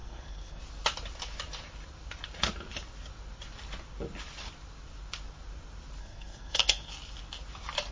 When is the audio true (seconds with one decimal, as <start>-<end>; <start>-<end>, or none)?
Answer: 0.6-6.0; 6.9-7.9